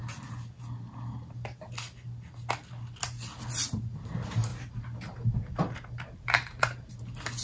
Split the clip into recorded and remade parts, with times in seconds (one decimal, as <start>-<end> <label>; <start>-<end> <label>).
0.0-4.5 recorded; 4.5-7.0 remade; 7.0-7.4 recorded